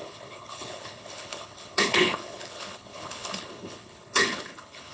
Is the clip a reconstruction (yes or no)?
yes